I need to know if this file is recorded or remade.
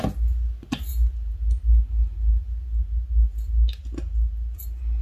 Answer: recorded